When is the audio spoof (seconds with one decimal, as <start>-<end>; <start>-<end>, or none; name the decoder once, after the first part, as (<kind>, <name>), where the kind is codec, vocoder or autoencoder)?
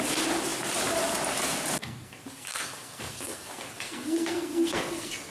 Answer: 1.8-5.3 (codec, SNAC)